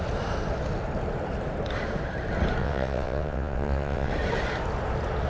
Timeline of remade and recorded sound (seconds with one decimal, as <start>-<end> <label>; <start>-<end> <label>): 0.0-2.6 recorded; 2.6-4.1 remade; 4.1-5.3 recorded